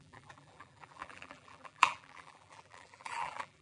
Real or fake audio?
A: fake